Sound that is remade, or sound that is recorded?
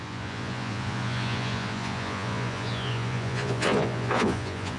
remade